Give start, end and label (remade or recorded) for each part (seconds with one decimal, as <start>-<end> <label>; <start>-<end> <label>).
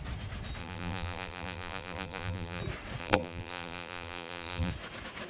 0.0-0.6 recorded; 0.6-2.6 remade; 2.6-3.0 recorded; 3.0-4.7 remade; 4.7-5.3 recorded